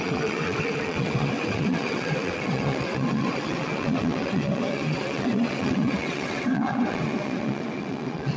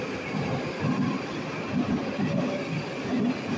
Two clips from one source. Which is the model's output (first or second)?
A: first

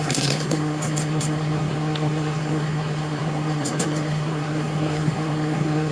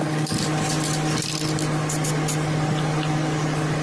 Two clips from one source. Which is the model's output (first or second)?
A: first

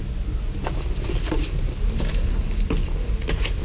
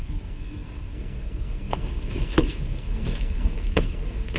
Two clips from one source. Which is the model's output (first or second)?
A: second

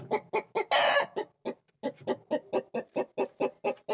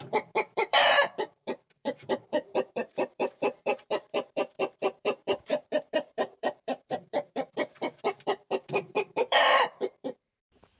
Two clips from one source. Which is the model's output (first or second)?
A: second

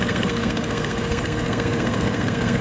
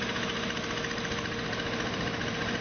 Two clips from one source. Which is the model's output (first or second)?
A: first